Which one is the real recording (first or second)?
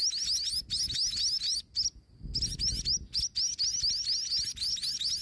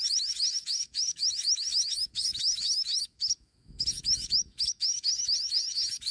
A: first